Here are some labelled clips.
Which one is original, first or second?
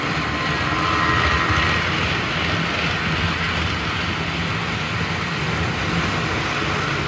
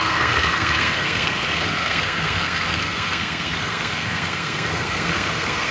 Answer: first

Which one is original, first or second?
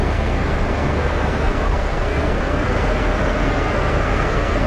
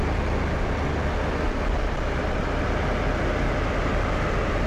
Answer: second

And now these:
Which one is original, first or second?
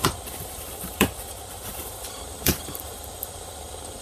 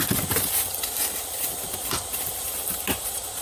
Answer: second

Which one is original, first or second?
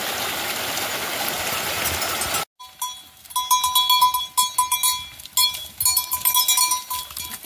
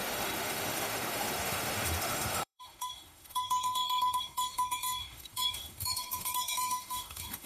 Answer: first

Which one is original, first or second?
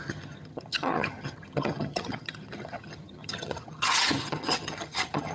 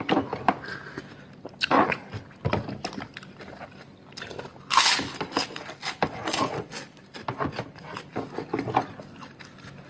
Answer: second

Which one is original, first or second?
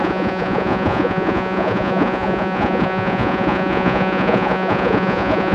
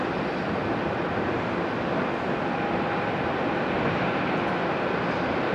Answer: second